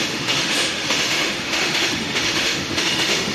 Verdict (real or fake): fake